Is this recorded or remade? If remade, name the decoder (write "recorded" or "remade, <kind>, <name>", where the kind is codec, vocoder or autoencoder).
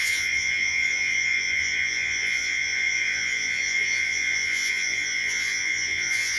remade, vocoder, Vocos